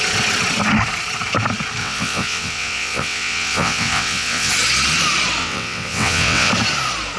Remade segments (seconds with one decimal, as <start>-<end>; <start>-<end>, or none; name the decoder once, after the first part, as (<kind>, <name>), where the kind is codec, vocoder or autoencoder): 1.8-4.5 (vocoder, WaveNeXt); 5.4-6.5